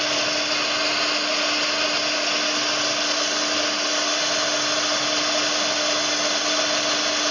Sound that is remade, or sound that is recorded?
recorded